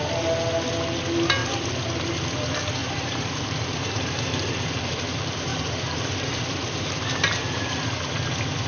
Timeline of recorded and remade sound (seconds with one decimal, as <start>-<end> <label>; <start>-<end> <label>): 0.0-2.8 recorded; 2.8-4.7 remade; 4.7-5.5 recorded; 5.5-7.8 remade; 7.8-8.7 recorded